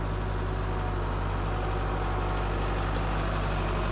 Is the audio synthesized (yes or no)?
no